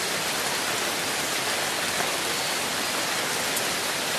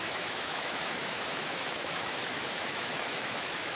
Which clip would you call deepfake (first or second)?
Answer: second